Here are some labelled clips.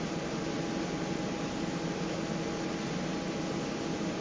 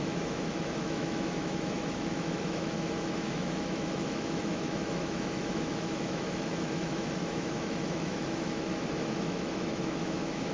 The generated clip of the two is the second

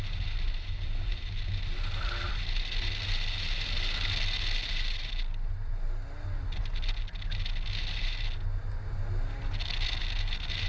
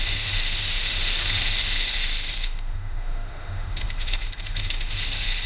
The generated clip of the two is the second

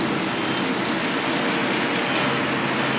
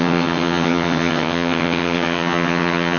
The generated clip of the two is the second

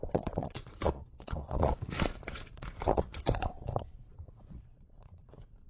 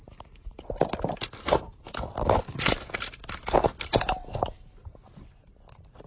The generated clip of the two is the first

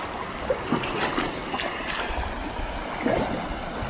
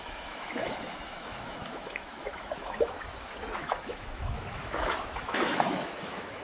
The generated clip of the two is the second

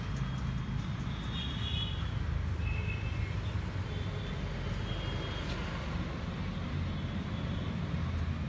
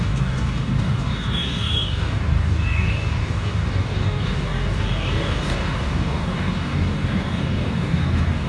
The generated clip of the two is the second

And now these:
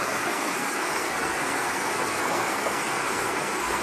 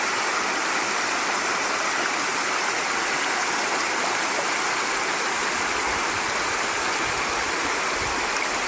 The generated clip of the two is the first